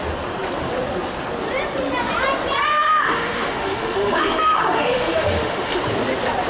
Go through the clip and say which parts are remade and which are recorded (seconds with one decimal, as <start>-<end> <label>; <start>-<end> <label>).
0.0-2.7 recorded; 2.7-5.8 remade; 5.8-6.5 recorded